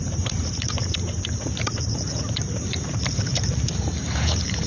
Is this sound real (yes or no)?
no